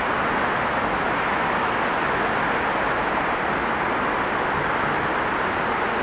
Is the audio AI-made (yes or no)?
no